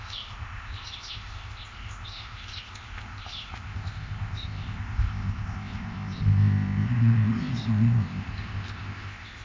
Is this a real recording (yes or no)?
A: no